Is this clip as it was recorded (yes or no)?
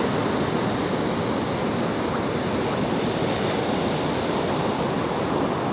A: yes